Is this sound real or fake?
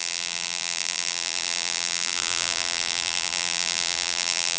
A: fake